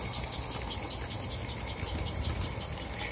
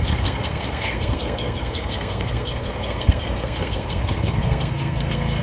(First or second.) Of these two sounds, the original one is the first